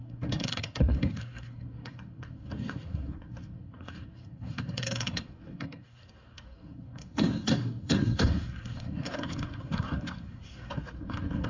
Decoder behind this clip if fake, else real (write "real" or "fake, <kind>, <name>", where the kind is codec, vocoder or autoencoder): fake, codec, SNAC